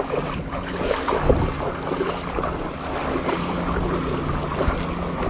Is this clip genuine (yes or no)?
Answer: yes